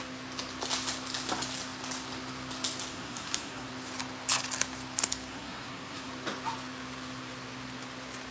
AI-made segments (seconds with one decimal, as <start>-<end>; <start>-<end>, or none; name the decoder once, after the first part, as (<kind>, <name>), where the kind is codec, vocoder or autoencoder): 2.9-3.7 (codec, SNAC); 5.3-6.1